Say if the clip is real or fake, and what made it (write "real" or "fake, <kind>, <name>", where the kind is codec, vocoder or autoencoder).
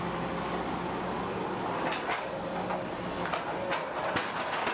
real